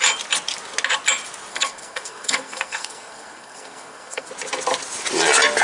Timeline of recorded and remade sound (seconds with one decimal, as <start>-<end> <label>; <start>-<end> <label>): 0.0-1.5 recorded; 1.5-4.3 remade; 4.3-5.6 recorded